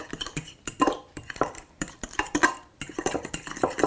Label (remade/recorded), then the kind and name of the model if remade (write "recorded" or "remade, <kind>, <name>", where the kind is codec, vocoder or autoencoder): remade, vocoder, BigVGAN v2